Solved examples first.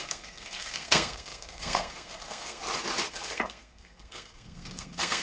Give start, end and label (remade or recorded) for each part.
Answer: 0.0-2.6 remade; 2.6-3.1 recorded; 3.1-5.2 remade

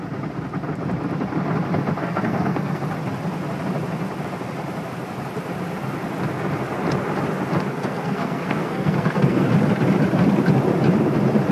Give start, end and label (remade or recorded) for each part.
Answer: 0.0-2.0 recorded; 2.0-2.8 remade; 2.8-7.7 recorded; 7.7-9.5 remade; 9.5-11.5 recorded

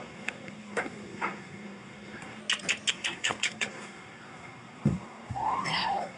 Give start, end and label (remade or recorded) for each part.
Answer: 0.0-2.4 remade; 2.4-2.9 recorded; 2.9-6.2 remade